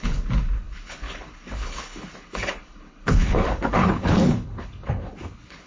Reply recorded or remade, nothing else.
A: remade